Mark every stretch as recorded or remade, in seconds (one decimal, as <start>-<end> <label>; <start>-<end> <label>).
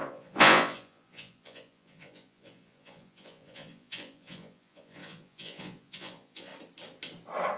0.0-6.5 remade; 6.5-7.6 recorded